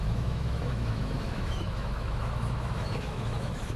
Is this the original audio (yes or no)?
no